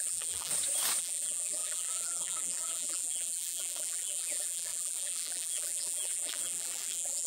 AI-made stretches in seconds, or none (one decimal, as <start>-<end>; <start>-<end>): 0.0-0.5; 1.0-7.3

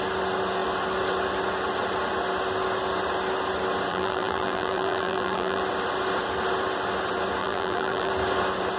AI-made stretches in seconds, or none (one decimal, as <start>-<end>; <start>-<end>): 3.9-5.6; 7.4-8.1

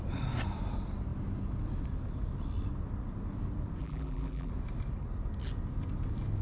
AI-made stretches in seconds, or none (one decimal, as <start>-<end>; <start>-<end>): 3.8-4.5

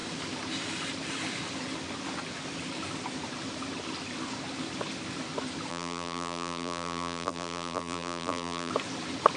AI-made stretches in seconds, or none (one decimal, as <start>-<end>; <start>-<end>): 5.7-8.7

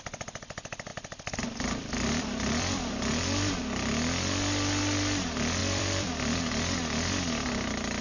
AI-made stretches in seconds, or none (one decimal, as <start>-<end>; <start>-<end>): 0.9-3.6; 5.6-6.4

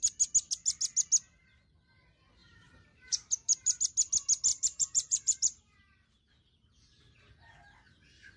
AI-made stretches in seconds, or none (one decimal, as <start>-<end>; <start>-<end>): 2.4-3.8; 4.5-7.0